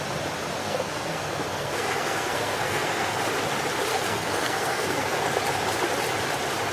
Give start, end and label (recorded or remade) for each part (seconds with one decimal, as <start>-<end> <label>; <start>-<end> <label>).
0.0-0.6 recorded; 0.6-3.2 remade; 3.2-3.9 recorded; 3.9-5.2 remade; 5.2-6.7 recorded